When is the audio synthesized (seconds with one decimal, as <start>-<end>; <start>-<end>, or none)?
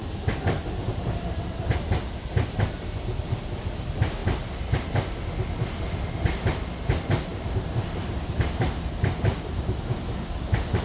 7.3-10.8